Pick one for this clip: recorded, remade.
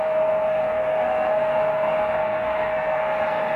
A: remade